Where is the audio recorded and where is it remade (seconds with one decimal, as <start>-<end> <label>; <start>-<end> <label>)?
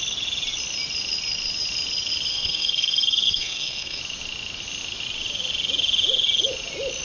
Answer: 0.0-2.3 recorded; 2.3-4.0 remade; 4.0-7.0 recorded